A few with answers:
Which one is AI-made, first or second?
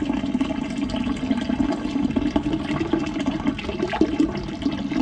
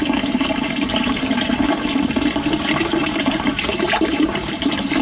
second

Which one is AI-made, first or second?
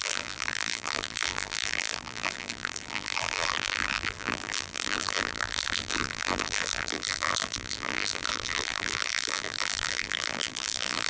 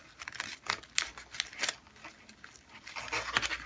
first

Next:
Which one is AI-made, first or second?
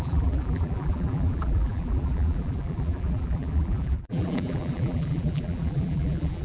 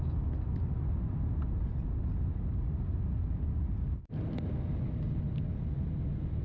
first